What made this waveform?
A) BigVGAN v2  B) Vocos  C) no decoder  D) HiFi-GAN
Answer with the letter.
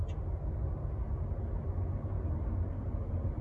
C